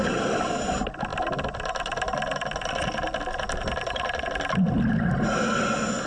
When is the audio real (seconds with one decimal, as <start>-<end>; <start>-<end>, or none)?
0.0-6.1